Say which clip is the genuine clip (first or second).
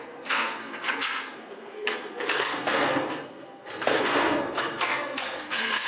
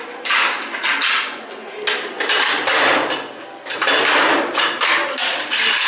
second